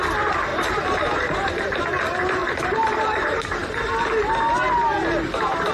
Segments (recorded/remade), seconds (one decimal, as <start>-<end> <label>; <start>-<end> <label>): 0.0-0.5 recorded; 0.5-1.8 remade; 1.8-2.4 recorded; 2.4-4.0 remade; 4.0-5.7 recorded